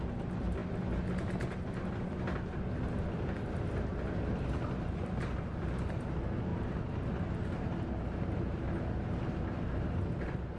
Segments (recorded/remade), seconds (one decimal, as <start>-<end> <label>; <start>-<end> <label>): 0.0-10.6 recorded